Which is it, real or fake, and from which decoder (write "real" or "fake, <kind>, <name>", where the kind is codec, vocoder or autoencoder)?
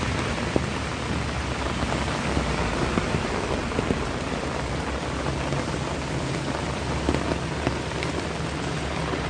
real